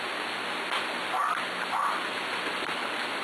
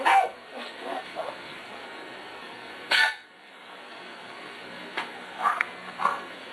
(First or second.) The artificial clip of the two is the second